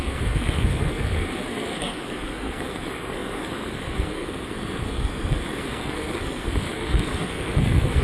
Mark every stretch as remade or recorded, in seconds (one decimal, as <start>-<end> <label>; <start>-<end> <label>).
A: 0.0-8.0 remade